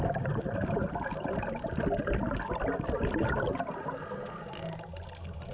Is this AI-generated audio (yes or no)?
no